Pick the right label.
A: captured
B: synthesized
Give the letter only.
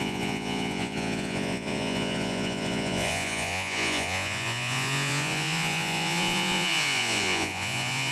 B